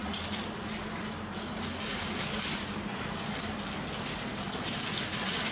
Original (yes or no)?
yes